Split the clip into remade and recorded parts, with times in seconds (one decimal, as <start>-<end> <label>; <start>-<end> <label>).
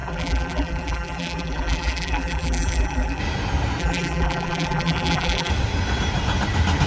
0.0-3.2 remade; 3.2-3.8 recorded; 3.8-5.5 remade; 5.5-6.9 recorded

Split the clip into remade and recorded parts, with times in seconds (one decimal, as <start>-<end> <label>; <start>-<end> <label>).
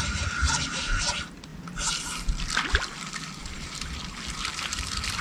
0.0-3.4 recorded; 3.4-4.0 remade; 4.0-5.2 recorded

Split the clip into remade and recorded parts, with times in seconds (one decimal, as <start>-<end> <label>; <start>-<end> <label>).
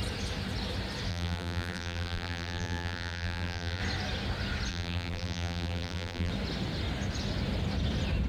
0.0-1.1 recorded; 1.1-3.8 remade; 3.8-4.7 recorded; 4.7-6.3 remade; 6.3-8.3 recorded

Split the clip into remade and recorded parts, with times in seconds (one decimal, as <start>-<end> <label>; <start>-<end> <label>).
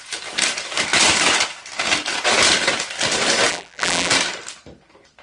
0.0-3.5 recorded; 3.5-4.1 remade; 4.1-5.2 recorded